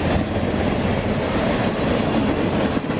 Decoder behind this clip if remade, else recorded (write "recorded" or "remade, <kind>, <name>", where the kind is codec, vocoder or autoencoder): recorded